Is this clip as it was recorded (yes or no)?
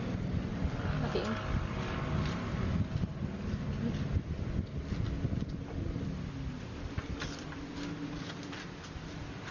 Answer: yes